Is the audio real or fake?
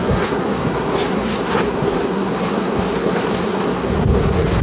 fake